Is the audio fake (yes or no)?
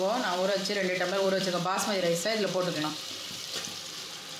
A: yes